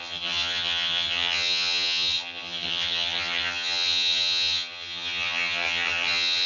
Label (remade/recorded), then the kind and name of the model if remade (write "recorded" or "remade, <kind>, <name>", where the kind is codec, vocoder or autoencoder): remade, vocoder, HiFi-GAN